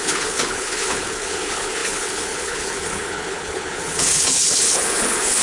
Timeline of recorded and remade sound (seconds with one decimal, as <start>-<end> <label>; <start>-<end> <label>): 0.0-5.4 remade

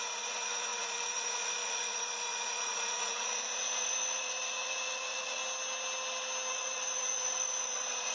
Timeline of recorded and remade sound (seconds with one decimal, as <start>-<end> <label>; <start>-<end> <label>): 0.0-5.4 remade; 5.4-6.5 recorded; 6.5-8.1 remade

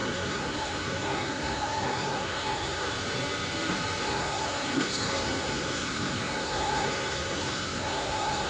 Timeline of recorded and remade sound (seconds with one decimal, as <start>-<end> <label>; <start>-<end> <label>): 0.0-2.9 remade; 2.9-4.0 recorded; 4.0-8.5 remade

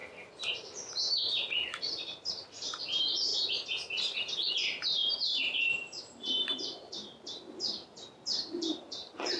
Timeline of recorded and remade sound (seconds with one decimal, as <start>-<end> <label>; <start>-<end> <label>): 0.0-3.3 remade; 3.3-4.5 recorded; 4.5-7.0 remade; 7.0-8.1 recorded; 8.1-9.4 remade